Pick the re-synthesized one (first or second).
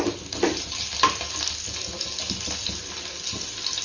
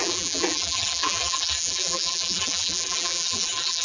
second